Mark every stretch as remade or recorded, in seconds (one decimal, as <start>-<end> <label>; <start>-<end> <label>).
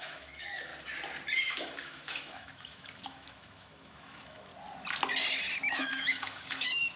0.0-0.7 remade; 0.7-1.4 recorded; 1.4-4.5 remade; 4.5-5.7 recorded; 5.7-7.0 remade